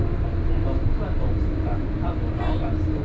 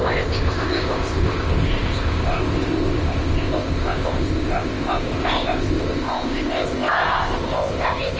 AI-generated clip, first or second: second